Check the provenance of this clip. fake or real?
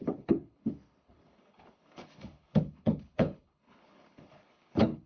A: fake